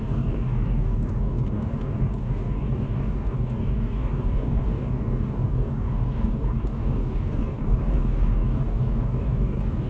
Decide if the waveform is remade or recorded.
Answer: remade